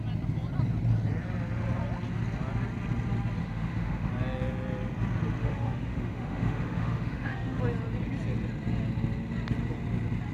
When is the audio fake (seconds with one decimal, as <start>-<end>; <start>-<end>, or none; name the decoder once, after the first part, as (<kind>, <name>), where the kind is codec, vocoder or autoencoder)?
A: 3.4-4.1 (autoencoder, DAC-VAE); 5.4-7.6